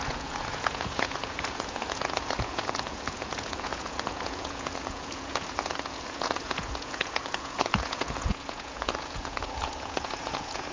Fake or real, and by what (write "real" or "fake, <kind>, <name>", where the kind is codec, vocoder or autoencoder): fake, vocoder, Vocos